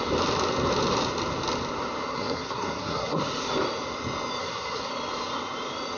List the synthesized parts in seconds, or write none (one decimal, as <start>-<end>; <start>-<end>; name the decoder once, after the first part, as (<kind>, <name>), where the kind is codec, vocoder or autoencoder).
2.1-3.2 (codec, SNAC); 4.4-4.9